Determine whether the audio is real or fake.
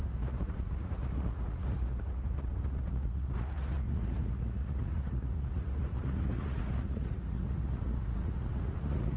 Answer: fake